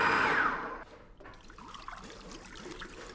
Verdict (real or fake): real